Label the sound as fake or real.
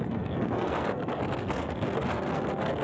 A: fake